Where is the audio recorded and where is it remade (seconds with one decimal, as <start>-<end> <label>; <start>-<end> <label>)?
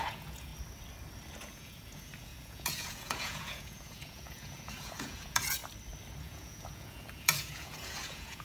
0.0-0.5 remade; 0.5-1.4 recorded; 1.4-5.6 remade; 5.6-6.2 recorded; 6.2-8.4 remade